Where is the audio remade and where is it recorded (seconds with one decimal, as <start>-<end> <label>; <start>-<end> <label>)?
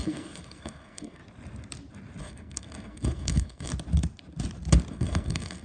0.0-1.2 remade; 1.2-2.2 recorded; 2.2-3.7 remade; 3.7-4.9 recorded; 4.9-5.6 remade